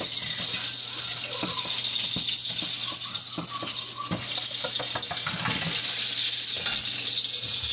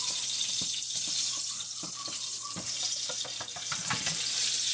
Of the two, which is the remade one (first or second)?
second